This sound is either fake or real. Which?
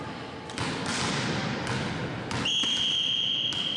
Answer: real